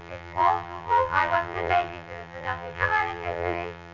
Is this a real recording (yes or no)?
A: no